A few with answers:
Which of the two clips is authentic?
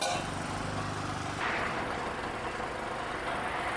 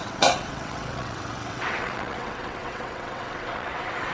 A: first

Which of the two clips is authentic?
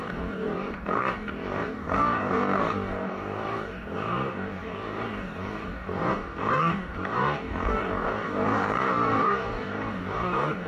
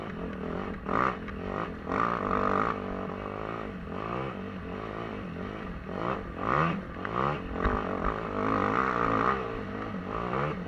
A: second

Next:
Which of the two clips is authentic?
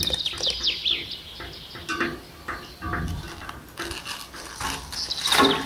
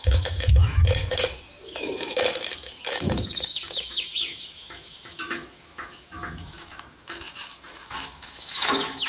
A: first